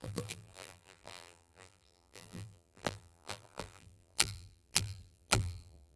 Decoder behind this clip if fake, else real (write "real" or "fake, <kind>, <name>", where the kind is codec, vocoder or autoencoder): fake, vocoder, BigVGAN v2